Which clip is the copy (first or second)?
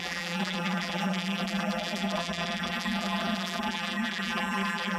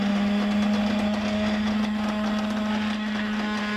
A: first